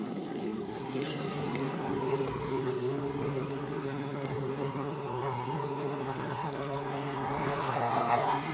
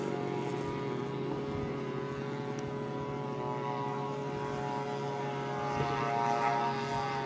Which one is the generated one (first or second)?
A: first